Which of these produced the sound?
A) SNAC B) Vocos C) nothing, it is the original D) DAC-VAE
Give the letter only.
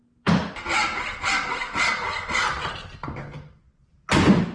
C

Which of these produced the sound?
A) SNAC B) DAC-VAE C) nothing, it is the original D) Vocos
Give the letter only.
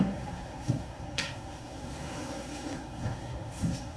A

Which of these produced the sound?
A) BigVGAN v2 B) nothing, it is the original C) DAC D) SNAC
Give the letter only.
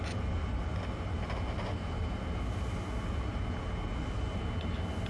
B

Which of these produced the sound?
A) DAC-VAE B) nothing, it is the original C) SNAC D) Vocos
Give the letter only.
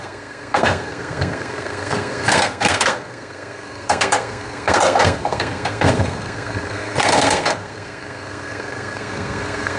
C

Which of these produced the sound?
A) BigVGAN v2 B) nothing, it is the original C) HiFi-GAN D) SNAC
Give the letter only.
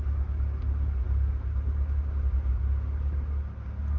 B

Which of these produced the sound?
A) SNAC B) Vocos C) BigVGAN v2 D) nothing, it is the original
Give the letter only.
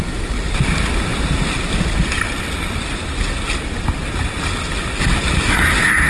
D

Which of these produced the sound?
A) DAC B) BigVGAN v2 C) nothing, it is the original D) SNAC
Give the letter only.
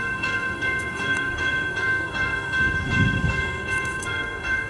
D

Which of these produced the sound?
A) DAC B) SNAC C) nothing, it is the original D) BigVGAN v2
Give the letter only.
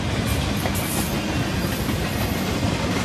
C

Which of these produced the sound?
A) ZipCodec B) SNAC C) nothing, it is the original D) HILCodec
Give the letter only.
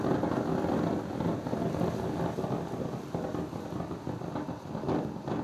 C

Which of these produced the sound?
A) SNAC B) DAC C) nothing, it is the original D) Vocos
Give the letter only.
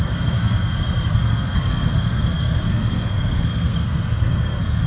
A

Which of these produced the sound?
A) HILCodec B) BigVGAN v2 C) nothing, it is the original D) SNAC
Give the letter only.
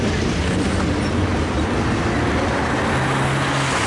C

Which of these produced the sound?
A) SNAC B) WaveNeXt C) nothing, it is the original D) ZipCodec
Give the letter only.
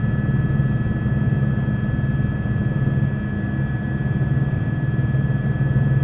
C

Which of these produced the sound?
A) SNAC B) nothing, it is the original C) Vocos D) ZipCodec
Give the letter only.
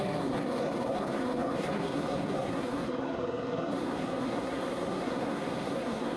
A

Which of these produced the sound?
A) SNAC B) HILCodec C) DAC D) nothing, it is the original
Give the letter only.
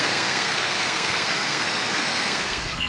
A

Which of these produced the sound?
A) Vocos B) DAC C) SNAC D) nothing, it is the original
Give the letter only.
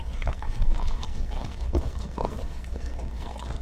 C